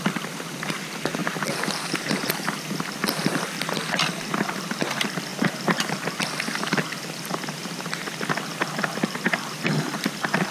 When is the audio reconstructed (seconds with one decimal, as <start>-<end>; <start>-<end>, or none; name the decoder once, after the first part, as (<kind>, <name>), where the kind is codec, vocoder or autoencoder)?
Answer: none